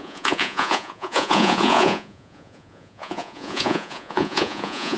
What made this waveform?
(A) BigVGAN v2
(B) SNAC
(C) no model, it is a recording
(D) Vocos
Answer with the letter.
D